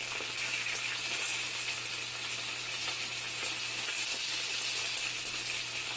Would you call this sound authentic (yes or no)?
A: yes